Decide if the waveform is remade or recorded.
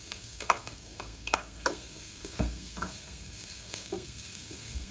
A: remade